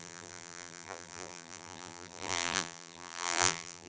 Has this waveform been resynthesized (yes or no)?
yes